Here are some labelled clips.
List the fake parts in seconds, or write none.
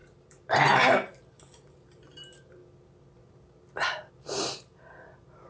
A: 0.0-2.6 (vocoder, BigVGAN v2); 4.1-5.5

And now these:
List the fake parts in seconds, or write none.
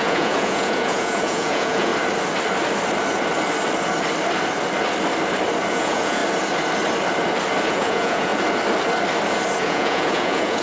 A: 0.0-1.9 (vocoder, Vocos); 5.7-6.2; 7.7-8.3; 9.6-10.6